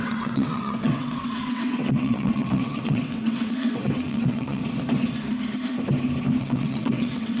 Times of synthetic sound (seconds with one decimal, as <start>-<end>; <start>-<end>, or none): 0.0-4.6; 6.4-7.4